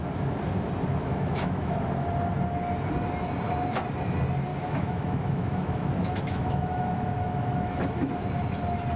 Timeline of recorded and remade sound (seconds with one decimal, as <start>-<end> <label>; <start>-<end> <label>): 0.0-0.9 recorded; 0.9-1.8 remade; 1.8-4.5 recorded; 4.5-8.1 remade; 8.1-9.0 recorded